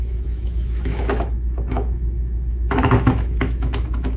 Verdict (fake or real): fake